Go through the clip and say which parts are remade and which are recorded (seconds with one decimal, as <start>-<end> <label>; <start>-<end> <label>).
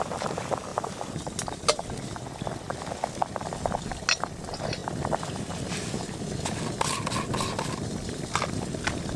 0.0-9.2 recorded